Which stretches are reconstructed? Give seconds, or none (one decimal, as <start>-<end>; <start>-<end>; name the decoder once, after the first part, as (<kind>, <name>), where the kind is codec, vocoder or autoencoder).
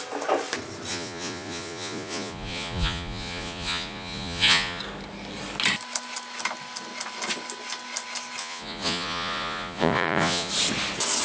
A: 0.9-4.8 (vocoder, Vocos); 8.4-10.5